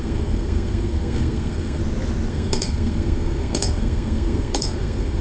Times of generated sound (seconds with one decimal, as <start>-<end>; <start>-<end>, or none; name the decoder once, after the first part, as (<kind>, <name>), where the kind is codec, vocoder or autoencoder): 0.0-1.8 (codec, SNAC); 2.3-5.2